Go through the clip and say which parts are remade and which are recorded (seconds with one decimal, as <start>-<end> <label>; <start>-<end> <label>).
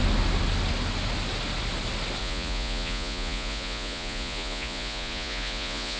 0.0-2.2 recorded; 2.2-6.0 remade